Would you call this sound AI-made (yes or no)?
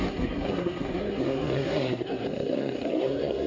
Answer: yes